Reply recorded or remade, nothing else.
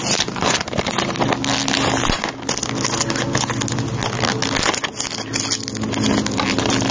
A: recorded